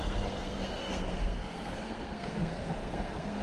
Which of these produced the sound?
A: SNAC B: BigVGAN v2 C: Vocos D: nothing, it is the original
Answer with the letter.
A